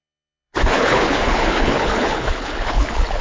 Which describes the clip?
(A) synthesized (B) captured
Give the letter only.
A